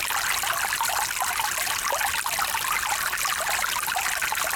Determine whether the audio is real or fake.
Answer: real